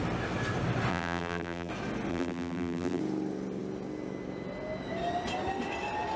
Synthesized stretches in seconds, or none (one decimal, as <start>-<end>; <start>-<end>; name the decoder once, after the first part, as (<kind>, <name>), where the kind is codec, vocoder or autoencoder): 0.9-1.7 (vocoder, BigVGAN v2); 2.1-3.0

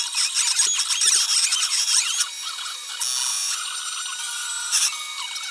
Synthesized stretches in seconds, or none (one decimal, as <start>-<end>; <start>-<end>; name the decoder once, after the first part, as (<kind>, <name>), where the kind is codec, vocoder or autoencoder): 1.5-2.9 (vocoder, Vocos); 3.3-3.8

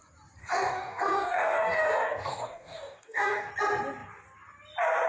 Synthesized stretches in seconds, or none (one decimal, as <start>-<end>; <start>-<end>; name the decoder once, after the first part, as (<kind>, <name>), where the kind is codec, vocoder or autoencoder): 0.4-3.5 (codec, DAC)

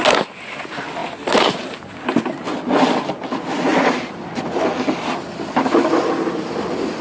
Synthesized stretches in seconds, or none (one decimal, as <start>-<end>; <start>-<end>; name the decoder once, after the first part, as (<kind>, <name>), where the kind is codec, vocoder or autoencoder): none

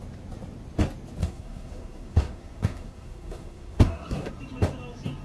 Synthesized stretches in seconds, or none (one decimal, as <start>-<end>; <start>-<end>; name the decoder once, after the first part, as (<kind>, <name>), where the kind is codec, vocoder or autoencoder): 1.2-4.3 (codec, SNAC)

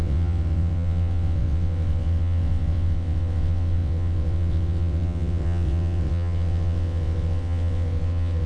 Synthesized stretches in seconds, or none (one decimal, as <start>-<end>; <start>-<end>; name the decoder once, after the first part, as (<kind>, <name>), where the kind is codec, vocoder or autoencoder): 0.0-8.5 (vocoder, WaveNeXt)